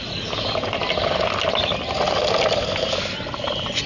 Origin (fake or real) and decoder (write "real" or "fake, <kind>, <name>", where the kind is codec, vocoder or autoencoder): real